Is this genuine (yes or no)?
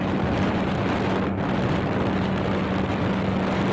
yes